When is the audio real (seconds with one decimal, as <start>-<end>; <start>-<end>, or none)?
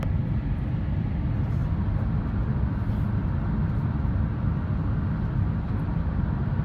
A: 0.0-6.6